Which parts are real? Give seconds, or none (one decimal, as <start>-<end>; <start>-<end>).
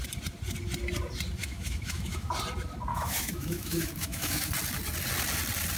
0.0-1.4; 2.3-2.9; 4.5-5.8